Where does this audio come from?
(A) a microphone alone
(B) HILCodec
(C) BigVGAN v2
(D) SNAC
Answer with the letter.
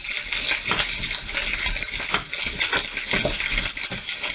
A